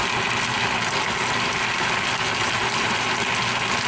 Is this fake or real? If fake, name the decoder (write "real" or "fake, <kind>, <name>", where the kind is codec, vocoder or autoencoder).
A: real